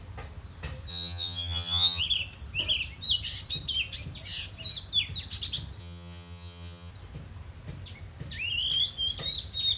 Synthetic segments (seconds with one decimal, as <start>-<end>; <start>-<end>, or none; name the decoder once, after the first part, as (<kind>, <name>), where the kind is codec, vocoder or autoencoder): 0.9-2.0 (vocoder, HiFi-GAN); 5.8-6.9